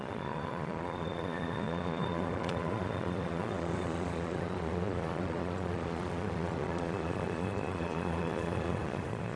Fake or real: fake